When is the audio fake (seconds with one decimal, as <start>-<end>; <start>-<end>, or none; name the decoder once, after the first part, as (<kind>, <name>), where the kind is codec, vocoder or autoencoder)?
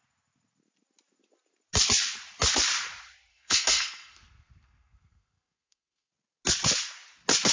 3.3-6.1 (codec, SNAC)